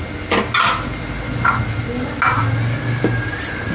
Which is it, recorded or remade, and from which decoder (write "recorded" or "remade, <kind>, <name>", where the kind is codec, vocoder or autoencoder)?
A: recorded